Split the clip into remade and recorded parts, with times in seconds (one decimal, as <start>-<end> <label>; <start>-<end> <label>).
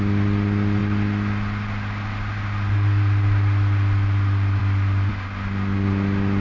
0.0-6.4 recorded